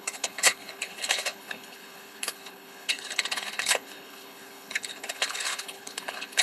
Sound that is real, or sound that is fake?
fake